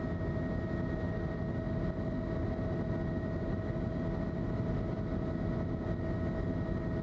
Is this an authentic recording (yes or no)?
yes